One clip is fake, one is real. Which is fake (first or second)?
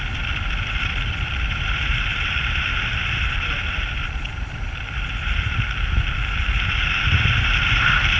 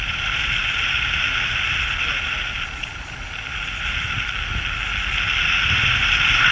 first